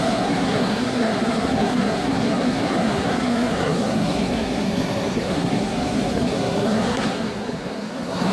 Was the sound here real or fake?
fake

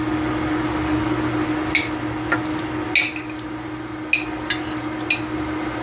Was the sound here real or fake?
real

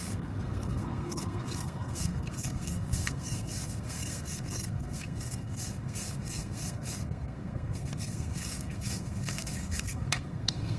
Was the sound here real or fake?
fake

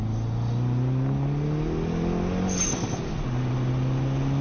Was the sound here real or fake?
real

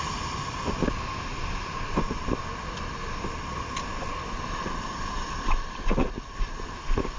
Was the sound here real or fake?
real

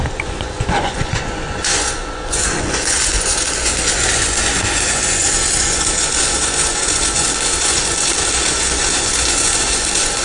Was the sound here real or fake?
fake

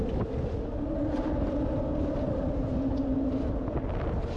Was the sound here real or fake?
real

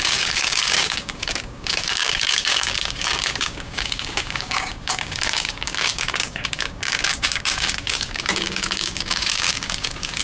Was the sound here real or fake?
fake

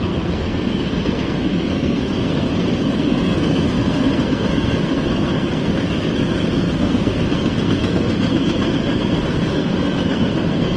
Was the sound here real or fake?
fake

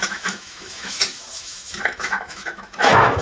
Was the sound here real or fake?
fake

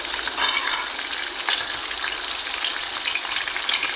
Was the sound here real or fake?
real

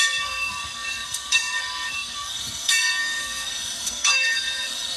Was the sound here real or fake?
fake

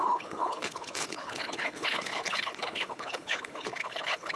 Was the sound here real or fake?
fake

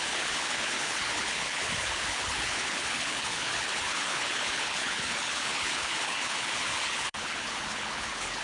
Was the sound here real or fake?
fake